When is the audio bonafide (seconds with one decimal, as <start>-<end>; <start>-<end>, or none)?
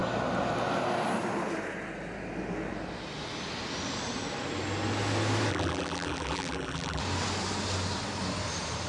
0.0-5.5; 7.0-8.9